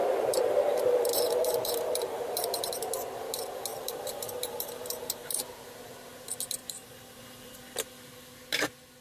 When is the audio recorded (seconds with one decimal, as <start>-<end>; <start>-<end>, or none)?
2.9-3.7; 5.4-6.6; 7.2-9.0